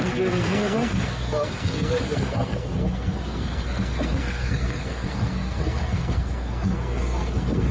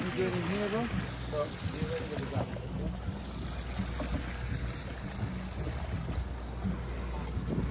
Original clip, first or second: second